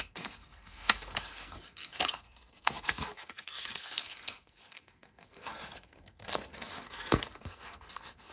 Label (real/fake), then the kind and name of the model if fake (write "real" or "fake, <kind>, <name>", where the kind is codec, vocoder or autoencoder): fake, codec, SNAC